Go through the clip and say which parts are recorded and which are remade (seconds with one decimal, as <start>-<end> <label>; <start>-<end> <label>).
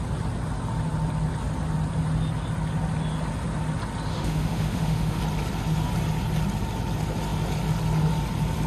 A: 0.0-4.1 recorded; 4.1-5.2 remade; 5.2-8.7 recorded